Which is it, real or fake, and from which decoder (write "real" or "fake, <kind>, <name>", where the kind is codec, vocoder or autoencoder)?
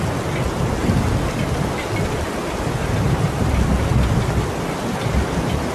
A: real